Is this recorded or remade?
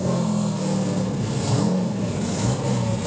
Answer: remade